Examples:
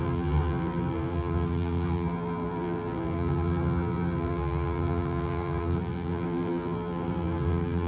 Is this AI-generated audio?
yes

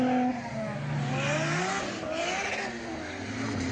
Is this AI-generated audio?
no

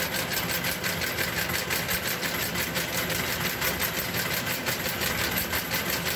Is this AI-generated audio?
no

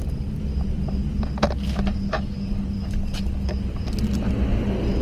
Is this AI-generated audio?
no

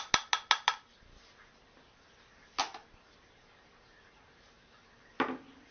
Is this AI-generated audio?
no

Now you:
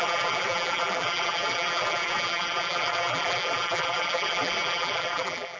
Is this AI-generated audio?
yes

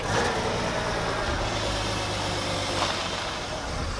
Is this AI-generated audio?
no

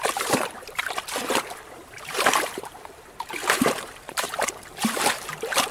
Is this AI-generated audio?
yes